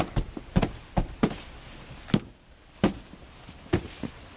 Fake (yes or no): no